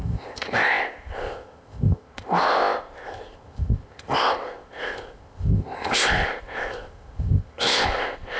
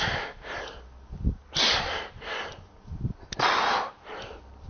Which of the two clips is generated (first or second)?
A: first